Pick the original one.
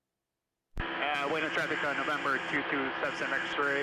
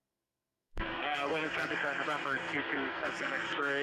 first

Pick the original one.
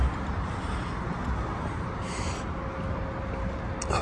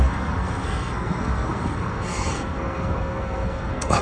first